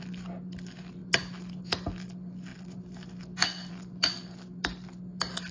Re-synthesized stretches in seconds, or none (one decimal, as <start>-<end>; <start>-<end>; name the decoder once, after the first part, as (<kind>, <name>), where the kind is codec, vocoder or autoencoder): none

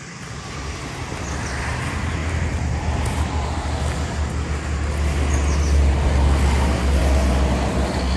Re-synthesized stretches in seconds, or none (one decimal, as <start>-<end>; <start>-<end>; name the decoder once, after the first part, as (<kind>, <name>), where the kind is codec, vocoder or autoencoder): none

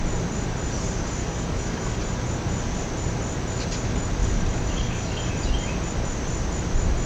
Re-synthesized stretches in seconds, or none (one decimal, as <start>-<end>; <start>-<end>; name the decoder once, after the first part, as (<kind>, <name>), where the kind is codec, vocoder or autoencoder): 1.2-2.0 (codec, DAC); 4.2-5.3

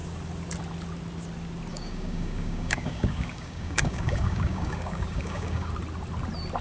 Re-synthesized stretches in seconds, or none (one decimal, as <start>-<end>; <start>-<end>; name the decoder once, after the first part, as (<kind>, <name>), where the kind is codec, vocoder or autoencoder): 1.7-5.7 (codec, DAC)

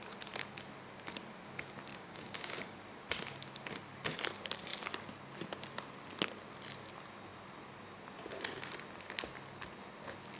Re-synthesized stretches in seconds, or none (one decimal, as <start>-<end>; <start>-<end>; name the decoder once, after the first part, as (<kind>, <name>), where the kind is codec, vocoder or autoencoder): 1.9-2.8 (codec, DAC)

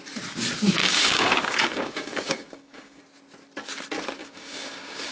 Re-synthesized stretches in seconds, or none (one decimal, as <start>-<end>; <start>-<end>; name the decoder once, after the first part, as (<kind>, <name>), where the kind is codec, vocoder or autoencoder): 0.8-3.0 (codec, DAC); 4.2-5.1

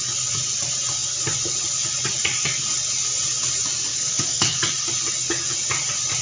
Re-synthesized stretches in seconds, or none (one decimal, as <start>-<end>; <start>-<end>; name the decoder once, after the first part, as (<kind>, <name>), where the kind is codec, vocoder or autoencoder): 3.9-4.6 (codec, DAC)